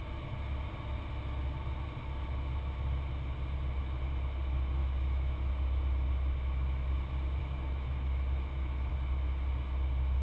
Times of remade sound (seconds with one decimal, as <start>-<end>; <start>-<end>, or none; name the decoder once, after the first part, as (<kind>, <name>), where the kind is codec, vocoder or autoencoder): 4.8-5.5 (autoencoder, DAC-VAE); 7.4-8.9